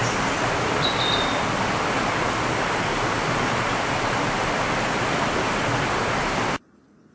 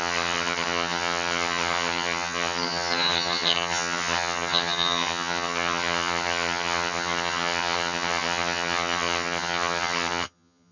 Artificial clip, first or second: second